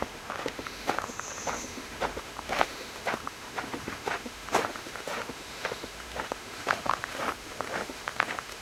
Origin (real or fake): fake